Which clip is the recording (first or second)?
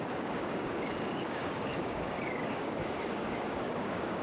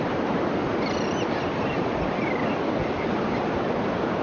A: second